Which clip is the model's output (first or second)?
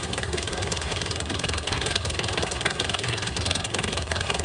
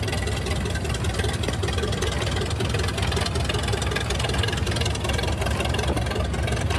first